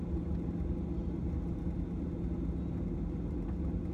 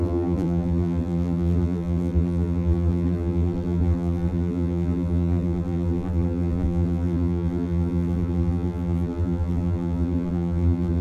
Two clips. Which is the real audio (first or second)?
first